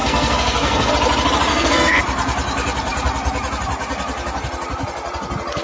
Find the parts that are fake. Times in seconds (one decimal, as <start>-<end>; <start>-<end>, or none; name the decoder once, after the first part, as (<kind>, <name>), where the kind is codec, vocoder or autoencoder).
0.0-0.9 (codec, SNAC); 1.5-2.0